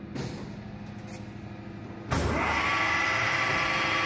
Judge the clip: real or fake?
real